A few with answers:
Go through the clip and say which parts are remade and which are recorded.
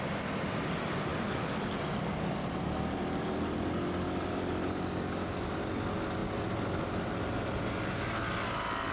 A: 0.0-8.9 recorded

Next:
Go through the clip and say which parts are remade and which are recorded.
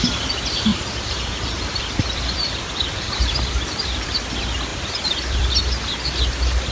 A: 0.0-0.7 recorded; 0.7-4.2 remade; 4.2-4.7 recorded; 4.7-5.5 remade; 5.5-6.7 recorded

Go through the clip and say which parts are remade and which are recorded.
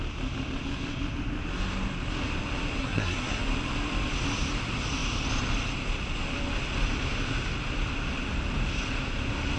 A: 0.0-2.8 recorded; 2.8-3.4 remade; 3.4-9.6 recorded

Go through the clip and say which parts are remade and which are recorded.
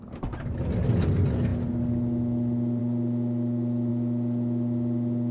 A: 0.0-5.3 recorded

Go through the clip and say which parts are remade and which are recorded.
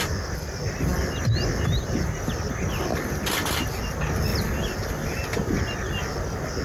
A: 0.0-6.6 recorded